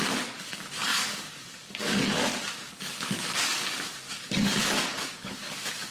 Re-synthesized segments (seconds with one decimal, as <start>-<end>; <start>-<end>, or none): 0.0-5.9